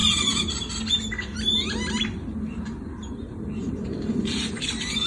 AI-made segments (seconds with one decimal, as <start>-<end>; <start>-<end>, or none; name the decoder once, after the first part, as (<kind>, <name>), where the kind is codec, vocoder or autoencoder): 3.1-5.1 (vocoder, BigVGAN v2)